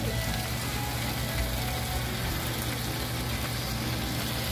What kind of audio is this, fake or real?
real